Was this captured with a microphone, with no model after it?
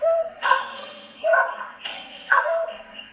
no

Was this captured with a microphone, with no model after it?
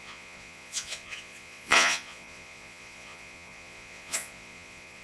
no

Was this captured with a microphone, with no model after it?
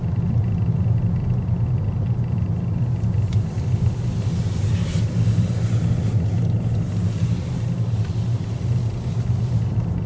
yes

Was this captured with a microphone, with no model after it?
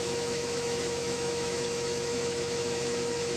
no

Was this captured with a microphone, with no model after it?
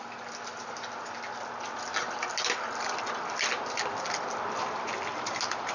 yes